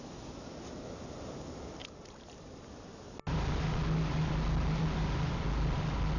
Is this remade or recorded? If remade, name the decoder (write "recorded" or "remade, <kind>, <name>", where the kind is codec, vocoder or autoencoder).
recorded